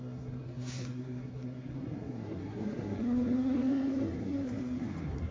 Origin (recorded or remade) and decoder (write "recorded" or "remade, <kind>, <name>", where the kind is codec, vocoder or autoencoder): remade, codec, SNAC